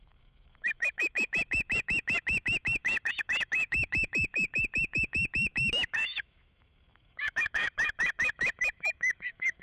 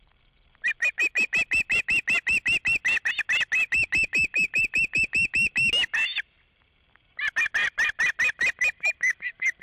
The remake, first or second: first